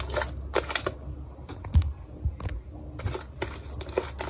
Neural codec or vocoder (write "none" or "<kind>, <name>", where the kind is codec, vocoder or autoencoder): none